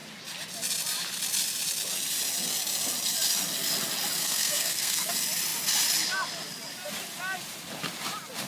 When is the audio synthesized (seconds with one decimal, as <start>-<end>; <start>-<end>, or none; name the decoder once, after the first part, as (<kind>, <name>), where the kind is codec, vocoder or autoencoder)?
4.2-5.1 (codec, SNAC)